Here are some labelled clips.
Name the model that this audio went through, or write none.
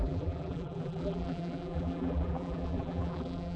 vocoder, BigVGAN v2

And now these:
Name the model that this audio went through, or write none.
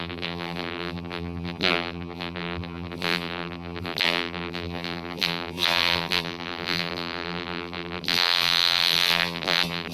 vocoder, BigVGAN v2